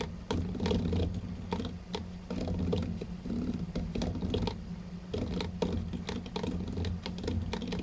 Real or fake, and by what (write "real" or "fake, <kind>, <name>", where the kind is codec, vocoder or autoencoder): real